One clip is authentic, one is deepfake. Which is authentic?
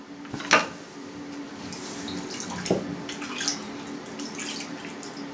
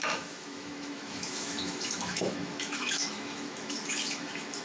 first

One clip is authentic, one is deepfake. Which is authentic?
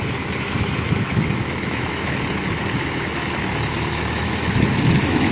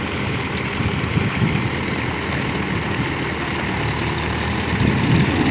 second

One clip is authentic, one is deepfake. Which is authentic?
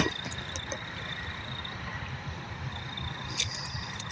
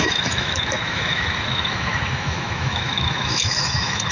first